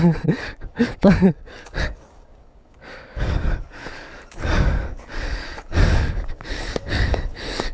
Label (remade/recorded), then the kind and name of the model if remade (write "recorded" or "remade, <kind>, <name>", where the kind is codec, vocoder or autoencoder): remade, codec, DAC